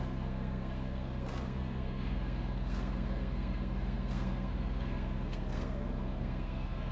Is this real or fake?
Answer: fake